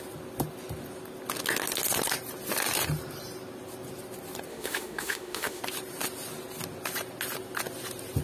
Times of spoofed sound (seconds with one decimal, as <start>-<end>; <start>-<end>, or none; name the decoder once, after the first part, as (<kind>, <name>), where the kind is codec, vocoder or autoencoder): 4.5-5.6 (autoencoder, DAC-VAE)